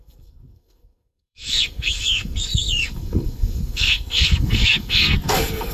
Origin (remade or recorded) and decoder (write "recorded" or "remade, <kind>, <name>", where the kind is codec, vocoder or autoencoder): remade, codec, SNAC